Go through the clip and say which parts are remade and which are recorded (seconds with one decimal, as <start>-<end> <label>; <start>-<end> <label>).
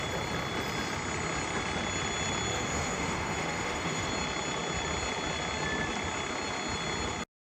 0.0-2.5 recorded; 2.5-4.1 remade; 4.1-7.6 recorded